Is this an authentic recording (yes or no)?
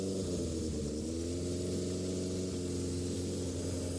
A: yes